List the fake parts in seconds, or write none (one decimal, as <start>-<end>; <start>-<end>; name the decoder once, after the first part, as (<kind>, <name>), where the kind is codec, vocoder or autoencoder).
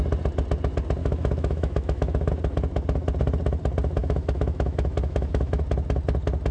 1.0-2.3 (autoencoder, DAC-VAE); 4.0-5.6